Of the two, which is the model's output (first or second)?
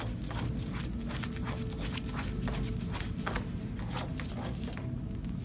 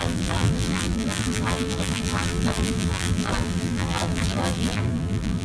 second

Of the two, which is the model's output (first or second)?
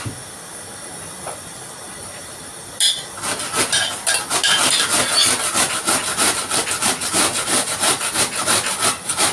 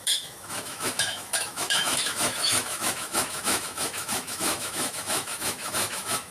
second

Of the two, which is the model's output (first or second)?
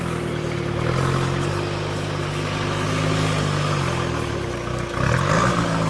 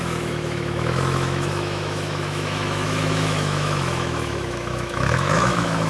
second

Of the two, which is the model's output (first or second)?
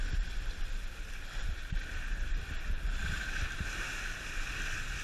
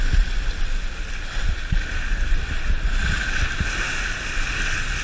first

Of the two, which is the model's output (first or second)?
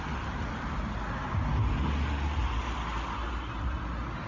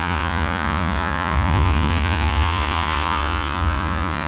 second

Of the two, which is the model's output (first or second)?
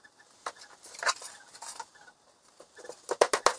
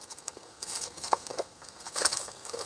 second